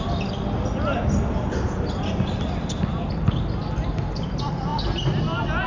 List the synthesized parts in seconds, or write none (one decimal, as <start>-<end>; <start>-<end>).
none